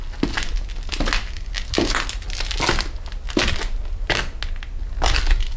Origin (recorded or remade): recorded